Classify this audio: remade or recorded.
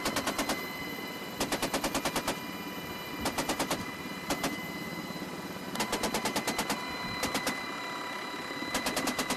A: recorded